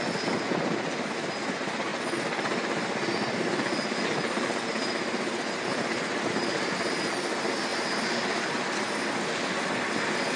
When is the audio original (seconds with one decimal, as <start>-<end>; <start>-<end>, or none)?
0.0-1.9; 6.7-10.4